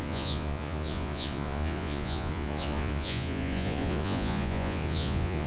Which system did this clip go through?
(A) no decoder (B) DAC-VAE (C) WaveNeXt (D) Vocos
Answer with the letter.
D